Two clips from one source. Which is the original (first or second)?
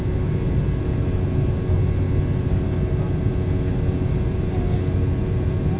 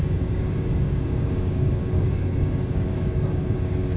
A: first